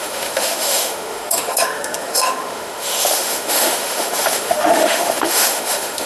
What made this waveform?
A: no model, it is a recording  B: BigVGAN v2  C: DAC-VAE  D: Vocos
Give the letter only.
C